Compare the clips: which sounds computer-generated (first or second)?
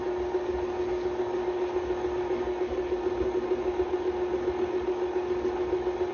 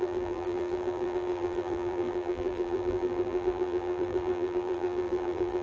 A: second